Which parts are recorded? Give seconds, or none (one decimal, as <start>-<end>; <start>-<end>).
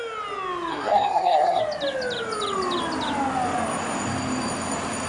0.0-0.7; 1.6-5.1